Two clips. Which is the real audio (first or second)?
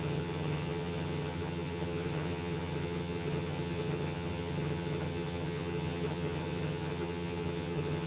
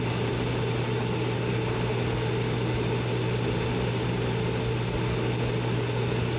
second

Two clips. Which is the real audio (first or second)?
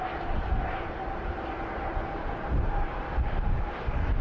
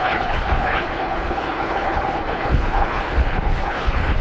first